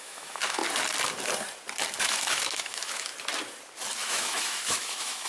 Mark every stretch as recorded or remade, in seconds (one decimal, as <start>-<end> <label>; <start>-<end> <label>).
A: 0.0-0.6 remade; 0.6-2.0 recorded; 2.0-3.1 remade; 3.1-4.0 recorded; 4.0-5.3 remade